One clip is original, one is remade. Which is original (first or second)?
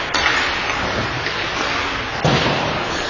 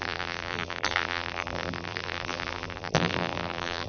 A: first